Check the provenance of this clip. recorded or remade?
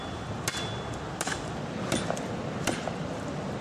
recorded